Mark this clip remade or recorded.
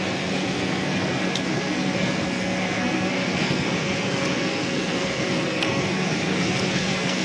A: remade